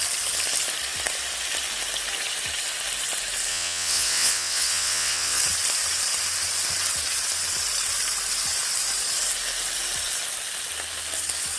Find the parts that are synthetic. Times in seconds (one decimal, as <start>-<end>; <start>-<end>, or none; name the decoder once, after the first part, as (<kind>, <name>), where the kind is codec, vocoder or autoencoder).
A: 3.5-5.4 (vocoder, WaveNeXt)